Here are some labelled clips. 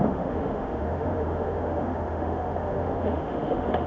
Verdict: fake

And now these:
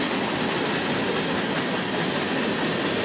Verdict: real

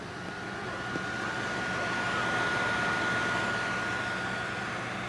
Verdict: real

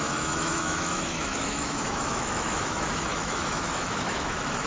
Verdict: fake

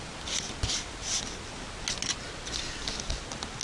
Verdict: real